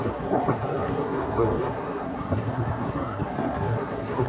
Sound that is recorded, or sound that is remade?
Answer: remade